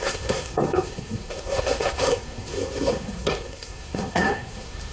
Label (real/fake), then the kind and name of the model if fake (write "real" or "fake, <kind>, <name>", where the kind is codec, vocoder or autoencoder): fake, codec, SNAC